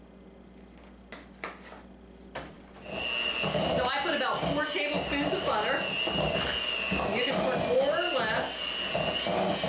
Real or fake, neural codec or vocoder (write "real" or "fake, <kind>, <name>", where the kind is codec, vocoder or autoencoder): real